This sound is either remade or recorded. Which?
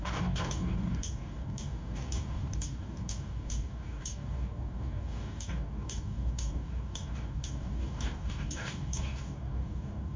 remade